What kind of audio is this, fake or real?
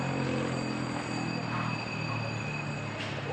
real